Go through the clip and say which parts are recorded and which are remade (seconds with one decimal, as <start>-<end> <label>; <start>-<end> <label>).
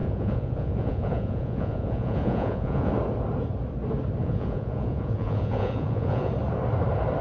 0.0-2.9 remade; 2.9-4.2 recorded; 4.2-6.3 remade; 6.3-7.2 recorded